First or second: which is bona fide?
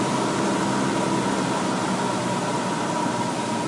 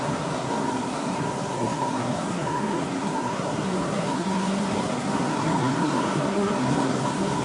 first